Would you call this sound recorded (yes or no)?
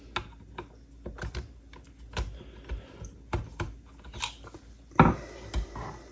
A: yes